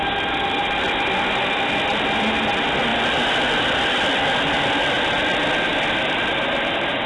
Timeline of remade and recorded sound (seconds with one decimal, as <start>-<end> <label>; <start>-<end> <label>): 0.0-7.1 recorded